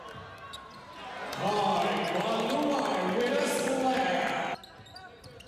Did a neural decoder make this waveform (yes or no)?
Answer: no